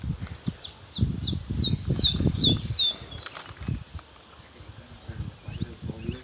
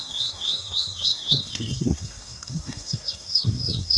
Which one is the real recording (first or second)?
first